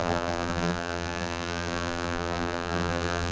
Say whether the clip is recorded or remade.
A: remade